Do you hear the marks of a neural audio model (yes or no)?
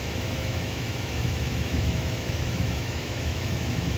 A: yes